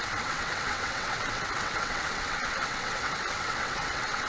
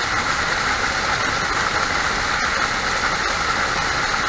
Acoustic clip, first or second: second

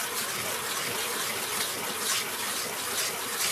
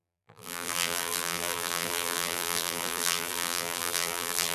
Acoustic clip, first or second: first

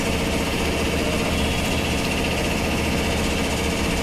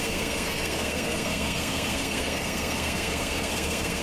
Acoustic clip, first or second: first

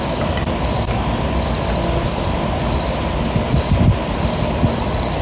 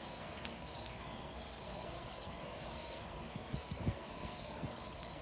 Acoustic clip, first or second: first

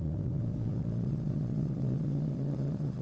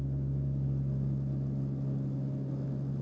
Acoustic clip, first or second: second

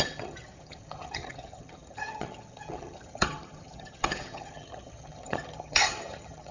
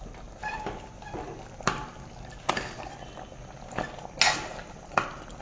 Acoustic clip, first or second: second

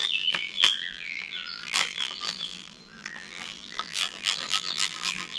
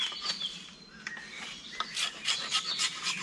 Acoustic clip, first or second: second